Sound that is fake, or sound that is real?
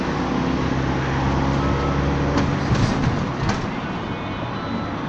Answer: real